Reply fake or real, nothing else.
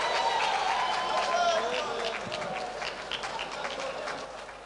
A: real